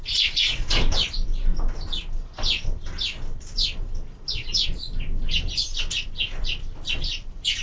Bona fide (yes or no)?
yes